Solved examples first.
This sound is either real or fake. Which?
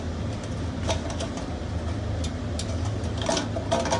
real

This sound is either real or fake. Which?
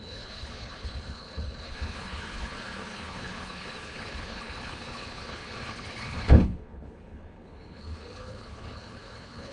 fake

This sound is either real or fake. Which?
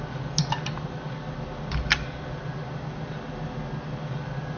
real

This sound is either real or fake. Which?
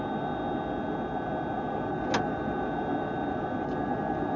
real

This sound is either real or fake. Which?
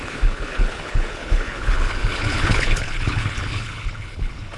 fake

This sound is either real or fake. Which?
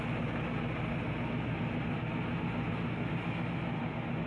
real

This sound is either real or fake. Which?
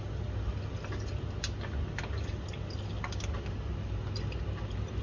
real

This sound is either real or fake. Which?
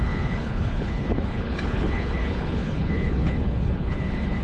fake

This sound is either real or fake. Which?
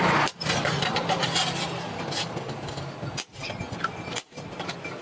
real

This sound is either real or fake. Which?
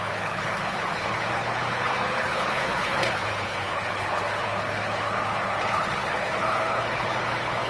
fake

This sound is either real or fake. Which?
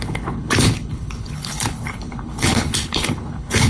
fake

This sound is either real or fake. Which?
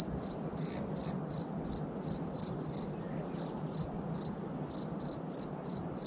real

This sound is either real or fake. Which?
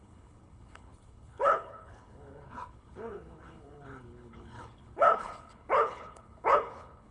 fake